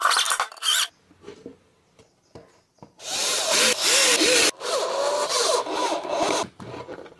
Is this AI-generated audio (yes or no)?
no